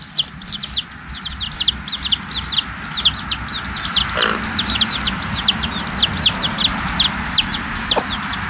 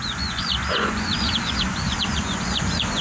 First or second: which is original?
first